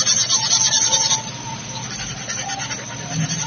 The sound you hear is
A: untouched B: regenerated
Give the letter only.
A